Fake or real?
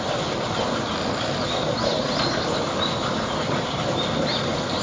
real